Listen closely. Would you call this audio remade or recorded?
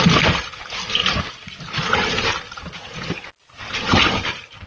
recorded